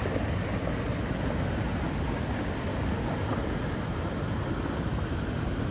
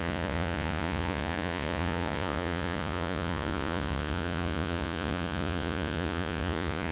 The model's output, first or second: second